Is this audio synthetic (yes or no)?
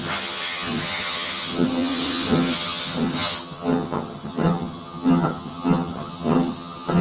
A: yes